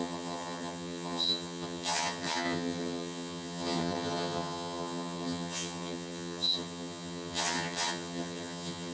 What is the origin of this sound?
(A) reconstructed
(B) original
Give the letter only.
A